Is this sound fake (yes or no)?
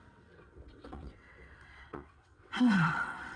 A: yes